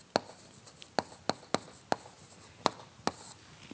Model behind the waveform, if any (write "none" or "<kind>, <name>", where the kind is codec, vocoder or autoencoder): none